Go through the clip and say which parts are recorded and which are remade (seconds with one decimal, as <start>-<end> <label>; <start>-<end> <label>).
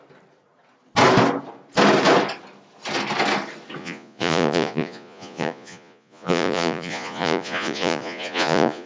0.0-3.8 recorded; 3.8-8.9 remade